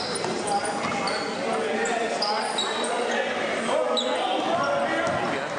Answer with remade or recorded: recorded